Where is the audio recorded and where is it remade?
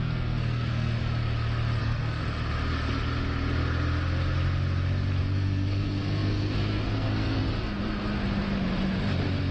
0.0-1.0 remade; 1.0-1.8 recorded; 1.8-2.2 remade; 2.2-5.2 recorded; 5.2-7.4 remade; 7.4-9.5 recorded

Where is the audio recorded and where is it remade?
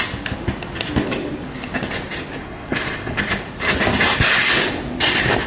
0.0-2.4 recorded; 2.4-3.2 remade; 3.2-5.5 recorded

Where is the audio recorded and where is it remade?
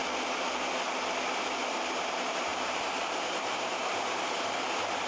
0.0-1.7 recorded; 1.7-5.1 remade